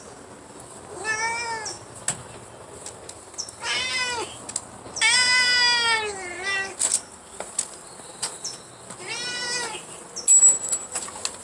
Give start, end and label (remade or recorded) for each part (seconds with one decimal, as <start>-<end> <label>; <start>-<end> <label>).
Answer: 0.0-11.4 recorded